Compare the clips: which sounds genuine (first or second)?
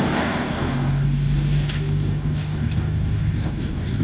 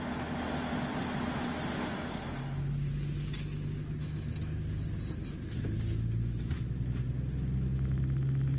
second